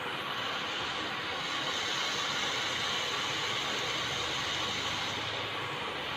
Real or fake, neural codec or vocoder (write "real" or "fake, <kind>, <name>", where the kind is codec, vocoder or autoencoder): real